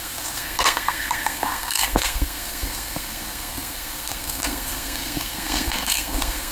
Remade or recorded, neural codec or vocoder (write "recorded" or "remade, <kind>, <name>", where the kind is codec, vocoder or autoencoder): remade, codec, SNAC